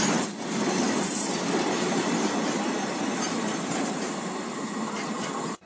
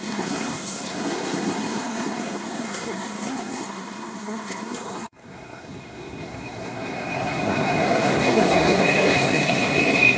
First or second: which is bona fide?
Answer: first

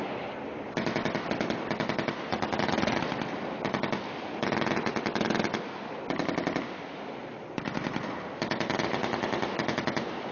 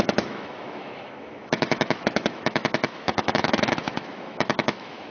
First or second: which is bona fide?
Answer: first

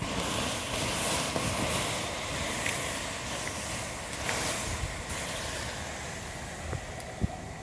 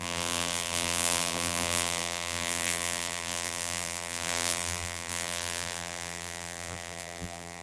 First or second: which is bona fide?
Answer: first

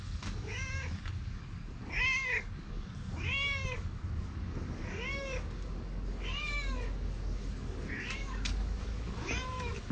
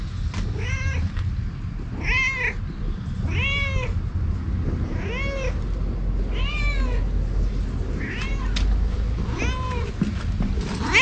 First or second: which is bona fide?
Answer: second